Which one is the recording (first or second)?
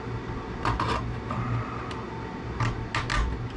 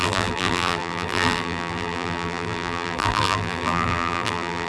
first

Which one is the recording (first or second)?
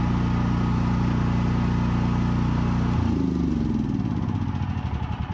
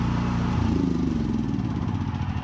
first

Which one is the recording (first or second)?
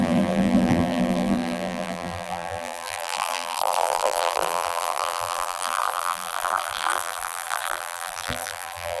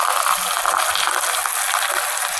second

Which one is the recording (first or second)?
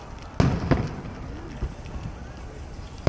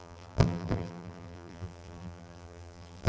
first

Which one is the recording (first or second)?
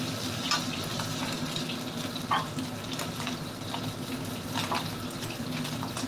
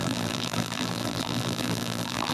first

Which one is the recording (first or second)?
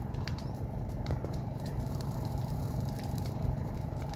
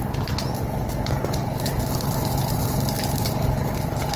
second